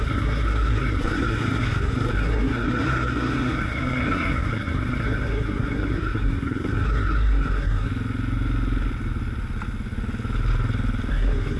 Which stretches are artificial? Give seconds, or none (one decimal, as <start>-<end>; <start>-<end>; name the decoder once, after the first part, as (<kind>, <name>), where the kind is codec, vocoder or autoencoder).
0.0-7.9 (codec, SNAC); 11.1-11.6